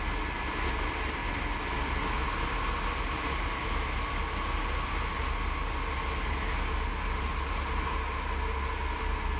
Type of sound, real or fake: real